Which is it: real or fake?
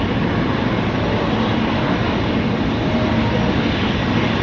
real